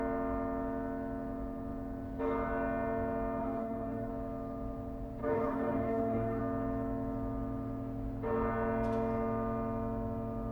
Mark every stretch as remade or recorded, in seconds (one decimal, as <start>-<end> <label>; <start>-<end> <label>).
0.0-3.4 recorded; 3.4-4.1 remade; 4.1-5.2 recorded; 5.2-6.4 remade; 6.4-10.5 recorded